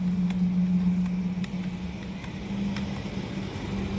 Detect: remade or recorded recorded